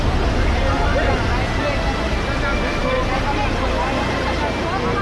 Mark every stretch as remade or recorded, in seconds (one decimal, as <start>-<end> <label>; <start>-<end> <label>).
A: 0.0-5.0 recorded